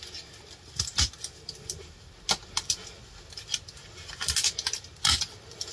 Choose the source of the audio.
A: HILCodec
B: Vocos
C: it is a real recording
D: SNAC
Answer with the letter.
C